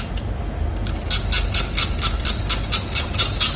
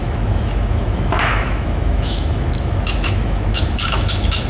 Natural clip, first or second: first